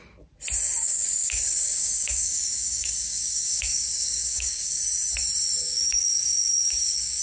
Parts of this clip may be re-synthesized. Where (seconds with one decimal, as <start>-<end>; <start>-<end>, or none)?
0.8-4.8; 5.6-7.2